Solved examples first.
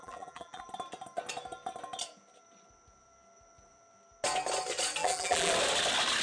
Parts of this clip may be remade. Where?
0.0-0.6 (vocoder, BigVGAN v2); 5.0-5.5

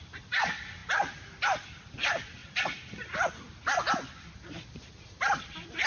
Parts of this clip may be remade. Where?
0.0-0.8 (vocoder, BigVGAN v2); 1.7-2.4; 4.7-5.9

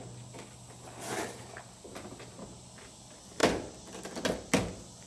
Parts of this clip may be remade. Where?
none